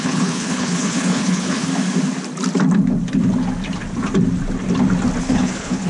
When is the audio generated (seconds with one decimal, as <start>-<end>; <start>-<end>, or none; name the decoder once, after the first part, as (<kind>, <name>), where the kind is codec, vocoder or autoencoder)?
0.0-1.7 (codec, HILCodec); 5.2-5.9